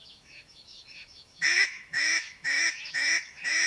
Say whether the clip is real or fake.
fake